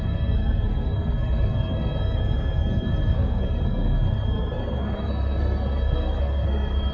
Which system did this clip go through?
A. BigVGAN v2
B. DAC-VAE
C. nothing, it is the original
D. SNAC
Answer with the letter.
D